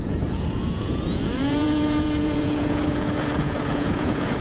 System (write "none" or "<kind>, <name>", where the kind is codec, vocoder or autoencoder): vocoder, Vocos